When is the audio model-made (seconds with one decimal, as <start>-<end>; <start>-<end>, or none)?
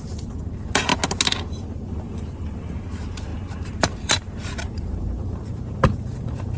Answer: 0.0-0.9; 1.9-6.6